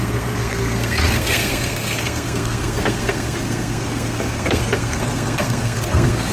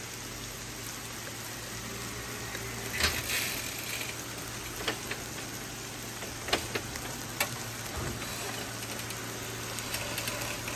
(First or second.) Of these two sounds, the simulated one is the first